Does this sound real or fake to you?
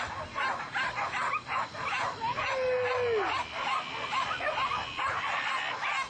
real